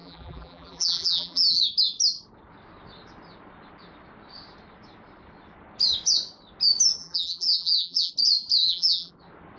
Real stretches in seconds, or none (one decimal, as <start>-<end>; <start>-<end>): 1.6-7.0; 8.1-8.6; 9.1-9.6